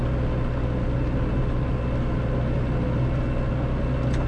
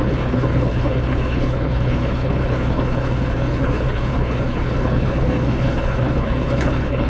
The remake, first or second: second